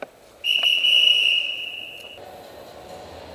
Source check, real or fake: real